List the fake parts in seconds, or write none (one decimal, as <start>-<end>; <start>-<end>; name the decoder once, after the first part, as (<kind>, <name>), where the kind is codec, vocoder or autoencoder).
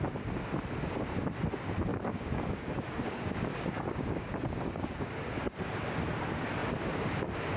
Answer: 1.9-5.6 (codec, DAC)